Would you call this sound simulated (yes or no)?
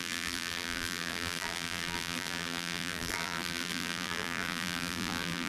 yes